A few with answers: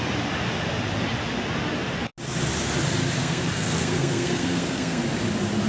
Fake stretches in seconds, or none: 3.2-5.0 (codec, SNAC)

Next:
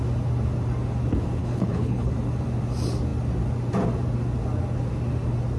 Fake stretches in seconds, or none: 1.4-2.1 (codec, HILCodec)

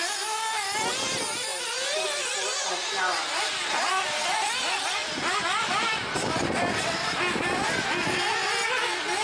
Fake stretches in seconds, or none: none

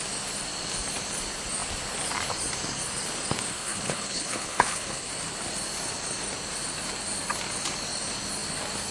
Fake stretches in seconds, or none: 3.5-5.1 (codec, HILCodec)

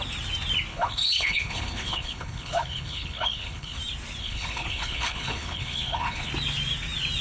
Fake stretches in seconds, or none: 0.7-3.8 (codec, HILCodec); 4.2-6.3